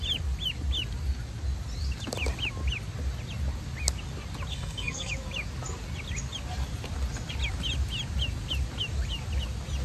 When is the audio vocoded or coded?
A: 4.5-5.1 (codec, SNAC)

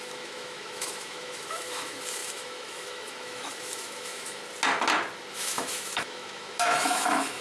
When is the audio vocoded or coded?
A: 0.0-4.4 (autoencoder, DAC-VAE); 5.3-7.4

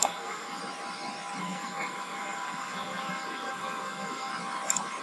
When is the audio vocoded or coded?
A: 0.0-0.6 (codec, SNAC); 1.4-4.3